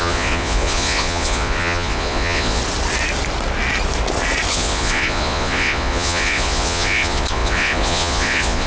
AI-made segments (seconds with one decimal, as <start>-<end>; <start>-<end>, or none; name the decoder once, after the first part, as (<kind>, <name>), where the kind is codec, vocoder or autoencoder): 0.0-2.6 (vocoder, Vocos); 4.5-8.7